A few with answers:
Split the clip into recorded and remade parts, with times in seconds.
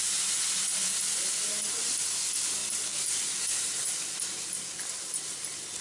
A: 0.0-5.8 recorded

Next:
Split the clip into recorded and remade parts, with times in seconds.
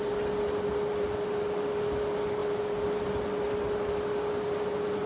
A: 0.0-5.1 recorded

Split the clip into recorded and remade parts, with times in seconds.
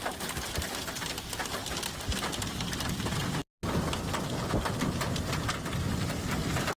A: 0.0-6.8 recorded